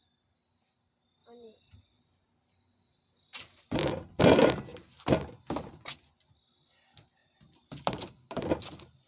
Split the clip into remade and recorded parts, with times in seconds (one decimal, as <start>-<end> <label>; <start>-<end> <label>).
0.0-1.2 recorded; 1.2-4.2 remade; 4.2-9.1 recorded